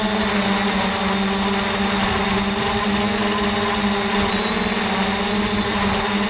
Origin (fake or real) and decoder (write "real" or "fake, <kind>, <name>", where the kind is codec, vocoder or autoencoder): real